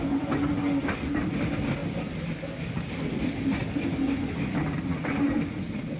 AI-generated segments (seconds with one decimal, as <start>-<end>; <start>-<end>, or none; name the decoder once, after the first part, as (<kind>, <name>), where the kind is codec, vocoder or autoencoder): none